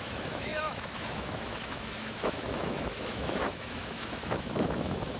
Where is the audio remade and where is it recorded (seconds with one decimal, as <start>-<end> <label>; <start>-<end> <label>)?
0.0-5.2 remade